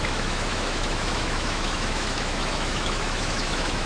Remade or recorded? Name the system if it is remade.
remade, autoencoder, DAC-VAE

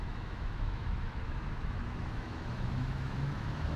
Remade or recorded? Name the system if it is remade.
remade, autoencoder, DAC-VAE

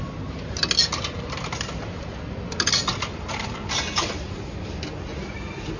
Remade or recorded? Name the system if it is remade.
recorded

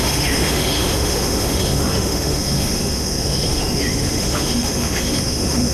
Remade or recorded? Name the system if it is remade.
remade, autoencoder, DAC-VAE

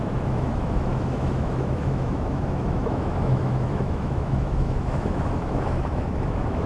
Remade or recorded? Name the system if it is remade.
remade, autoencoder, DAC-VAE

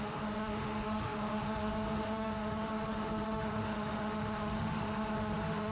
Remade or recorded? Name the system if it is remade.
remade, autoencoder, DAC-VAE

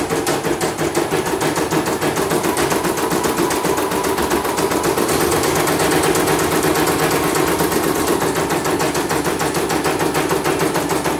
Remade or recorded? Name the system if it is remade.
recorded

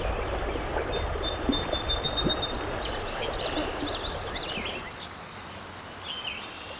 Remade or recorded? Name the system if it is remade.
recorded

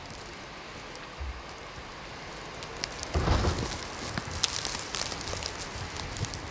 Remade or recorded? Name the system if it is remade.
recorded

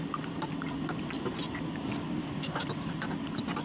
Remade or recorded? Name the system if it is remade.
recorded